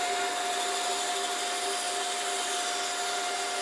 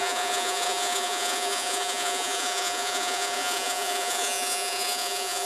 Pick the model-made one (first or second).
second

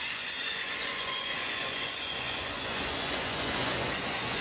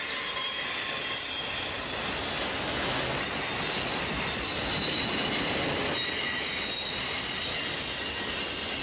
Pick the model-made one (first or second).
first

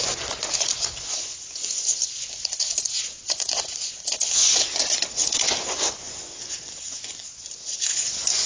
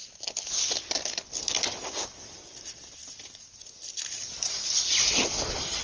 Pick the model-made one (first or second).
first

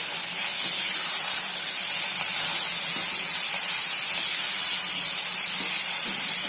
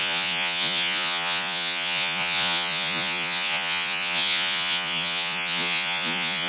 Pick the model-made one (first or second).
second